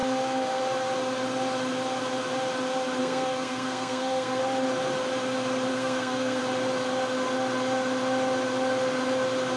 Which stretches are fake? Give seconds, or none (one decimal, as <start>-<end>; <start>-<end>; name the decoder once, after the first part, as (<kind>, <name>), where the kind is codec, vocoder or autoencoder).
0.0-0.6 (codec, SNAC); 3.0-4.4; 5.7-6.4